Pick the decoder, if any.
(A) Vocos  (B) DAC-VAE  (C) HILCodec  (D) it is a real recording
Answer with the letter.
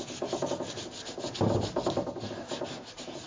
D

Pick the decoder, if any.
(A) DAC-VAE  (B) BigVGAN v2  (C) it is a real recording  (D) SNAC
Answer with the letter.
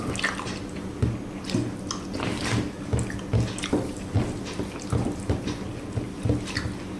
C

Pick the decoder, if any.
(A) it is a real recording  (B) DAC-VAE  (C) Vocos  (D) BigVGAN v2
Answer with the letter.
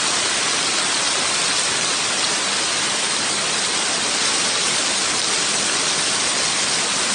A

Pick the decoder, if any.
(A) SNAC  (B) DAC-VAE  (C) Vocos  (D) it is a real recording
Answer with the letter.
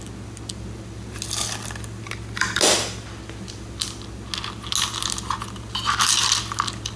D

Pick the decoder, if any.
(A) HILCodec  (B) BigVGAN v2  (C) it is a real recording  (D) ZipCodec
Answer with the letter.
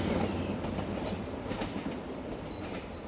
C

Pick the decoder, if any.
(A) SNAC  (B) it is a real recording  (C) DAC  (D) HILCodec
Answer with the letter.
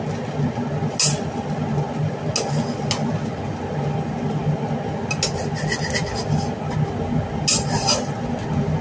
B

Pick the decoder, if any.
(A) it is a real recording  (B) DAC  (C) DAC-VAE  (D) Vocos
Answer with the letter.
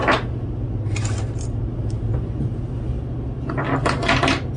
A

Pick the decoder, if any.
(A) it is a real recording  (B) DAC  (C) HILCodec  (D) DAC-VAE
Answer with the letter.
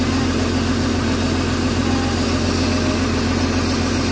A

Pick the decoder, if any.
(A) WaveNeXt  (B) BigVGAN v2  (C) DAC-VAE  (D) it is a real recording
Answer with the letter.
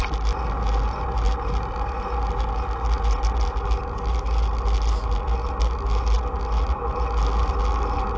D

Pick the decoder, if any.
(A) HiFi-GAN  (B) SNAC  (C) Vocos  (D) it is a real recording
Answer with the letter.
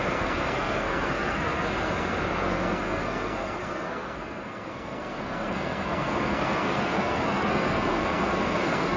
B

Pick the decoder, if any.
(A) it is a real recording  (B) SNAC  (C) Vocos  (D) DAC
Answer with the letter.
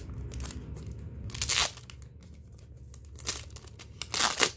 A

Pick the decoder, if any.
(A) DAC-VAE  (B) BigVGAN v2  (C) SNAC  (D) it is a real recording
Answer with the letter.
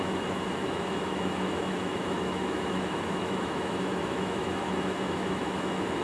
A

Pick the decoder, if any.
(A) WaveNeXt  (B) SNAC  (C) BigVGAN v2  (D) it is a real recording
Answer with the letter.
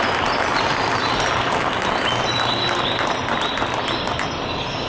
D